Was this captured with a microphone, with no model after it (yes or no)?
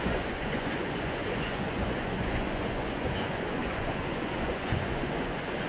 no